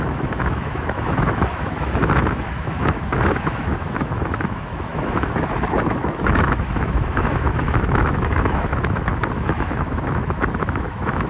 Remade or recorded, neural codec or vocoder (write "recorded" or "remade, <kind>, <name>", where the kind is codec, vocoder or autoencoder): remade, autoencoder, DAC-VAE